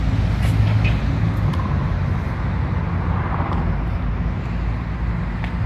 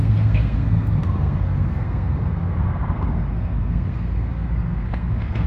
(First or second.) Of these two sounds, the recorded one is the first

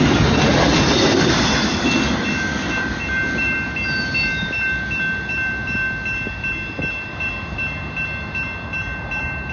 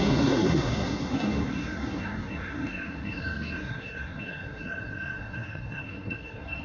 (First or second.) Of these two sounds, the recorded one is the first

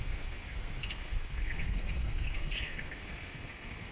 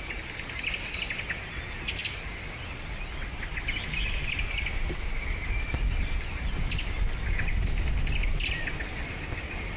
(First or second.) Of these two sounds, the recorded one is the second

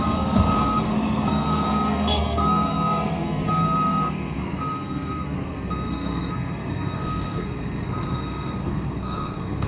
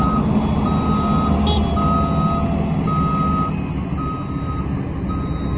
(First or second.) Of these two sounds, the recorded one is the second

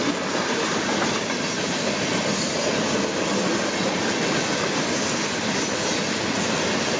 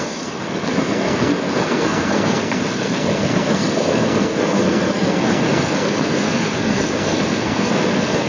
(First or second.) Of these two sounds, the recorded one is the first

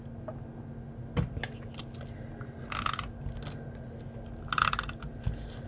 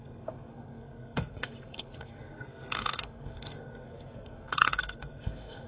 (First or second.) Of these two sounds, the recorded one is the first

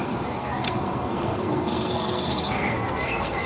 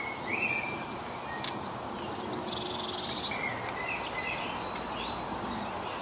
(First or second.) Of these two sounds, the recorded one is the second